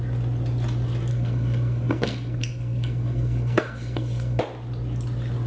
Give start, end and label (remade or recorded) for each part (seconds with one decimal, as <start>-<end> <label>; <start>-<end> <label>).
0.0-1.1 recorded; 1.1-4.4 remade; 4.4-5.5 recorded

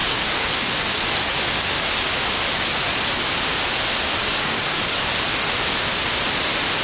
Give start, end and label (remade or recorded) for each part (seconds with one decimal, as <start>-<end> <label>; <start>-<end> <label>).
0.0-2.1 remade; 2.1-4.2 recorded; 4.2-5.1 remade; 5.1-6.8 recorded